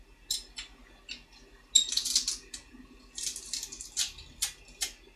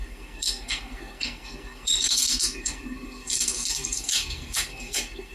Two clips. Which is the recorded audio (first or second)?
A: first